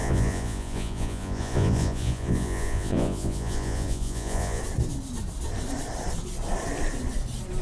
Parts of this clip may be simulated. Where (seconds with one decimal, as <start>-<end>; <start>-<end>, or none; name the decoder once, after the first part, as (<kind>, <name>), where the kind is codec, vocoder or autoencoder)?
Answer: 0.0-4.6 (vocoder, Vocos)